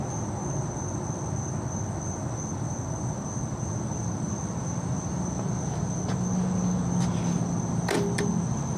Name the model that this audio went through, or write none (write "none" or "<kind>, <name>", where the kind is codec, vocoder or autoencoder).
none